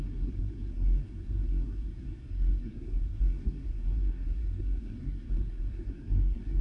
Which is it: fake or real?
fake